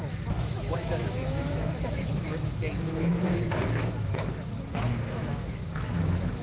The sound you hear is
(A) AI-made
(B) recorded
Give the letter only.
A